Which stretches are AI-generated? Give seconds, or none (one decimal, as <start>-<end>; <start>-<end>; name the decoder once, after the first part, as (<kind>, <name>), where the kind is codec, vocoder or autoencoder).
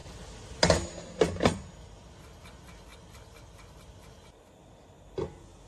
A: none